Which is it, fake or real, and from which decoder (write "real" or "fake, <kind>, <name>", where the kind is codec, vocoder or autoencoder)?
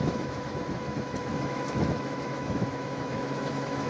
fake, autoencoder, DAC-VAE